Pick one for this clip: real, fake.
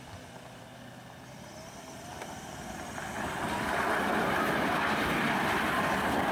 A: real